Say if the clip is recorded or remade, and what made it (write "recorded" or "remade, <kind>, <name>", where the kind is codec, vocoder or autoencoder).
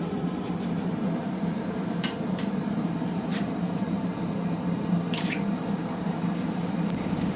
remade, vocoder, BigVGAN v2